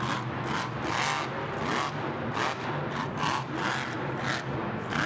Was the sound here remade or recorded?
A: recorded